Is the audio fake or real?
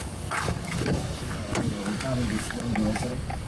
fake